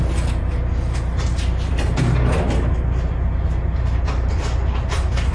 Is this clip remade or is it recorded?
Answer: recorded